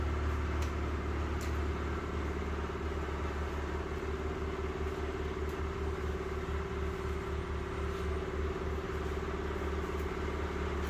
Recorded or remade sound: recorded